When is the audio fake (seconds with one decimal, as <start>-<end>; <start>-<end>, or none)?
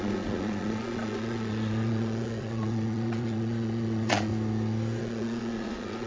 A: 0.0-4.3; 5.0-6.1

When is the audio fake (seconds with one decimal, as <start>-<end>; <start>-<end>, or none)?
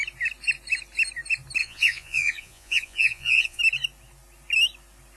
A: 1.6-3.6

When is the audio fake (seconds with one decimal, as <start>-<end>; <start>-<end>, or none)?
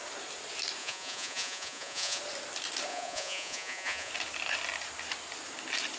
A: 0.8-2.2; 2.9-4.1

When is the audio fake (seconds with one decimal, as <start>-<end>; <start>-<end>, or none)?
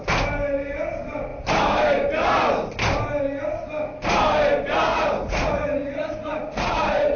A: 4.9-7.2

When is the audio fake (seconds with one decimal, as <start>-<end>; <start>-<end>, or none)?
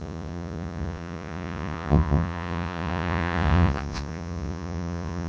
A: 0.0-5.3